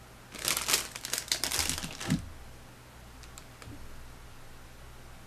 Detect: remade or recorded recorded